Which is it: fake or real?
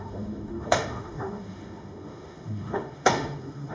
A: fake